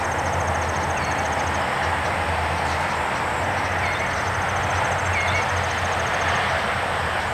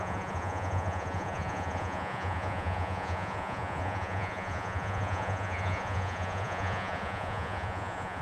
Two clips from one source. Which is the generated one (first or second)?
second